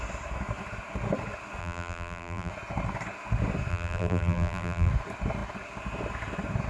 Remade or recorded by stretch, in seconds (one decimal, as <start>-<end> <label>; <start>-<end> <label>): 0.0-1.6 recorded; 1.6-2.5 remade; 2.5-3.7 recorded; 3.7-4.9 remade; 4.9-6.7 recorded